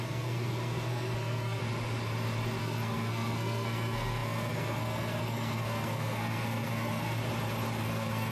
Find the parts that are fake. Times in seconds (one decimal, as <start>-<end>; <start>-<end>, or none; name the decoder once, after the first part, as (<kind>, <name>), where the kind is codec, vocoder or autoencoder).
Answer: 0.0-1.6 (codec, SNAC); 2.6-7.2; 7.8-8.3

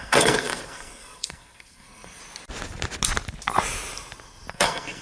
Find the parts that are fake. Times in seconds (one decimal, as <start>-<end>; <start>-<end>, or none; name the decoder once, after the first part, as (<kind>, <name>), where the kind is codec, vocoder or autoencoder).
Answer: 0.0-2.2 (codec, SNAC); 4.5-5.0

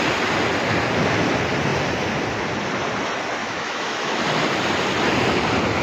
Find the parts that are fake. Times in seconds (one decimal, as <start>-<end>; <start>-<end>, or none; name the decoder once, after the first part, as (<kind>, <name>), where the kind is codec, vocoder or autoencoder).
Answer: 3.4-4.2 (autoencoder, DAC-VAE)